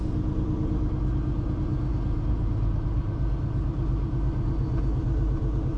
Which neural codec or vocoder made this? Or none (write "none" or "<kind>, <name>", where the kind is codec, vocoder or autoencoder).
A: none